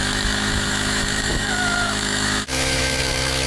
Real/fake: fake